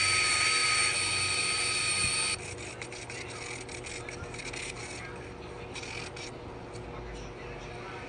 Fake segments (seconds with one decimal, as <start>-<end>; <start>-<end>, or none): none